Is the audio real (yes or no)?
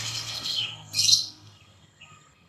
no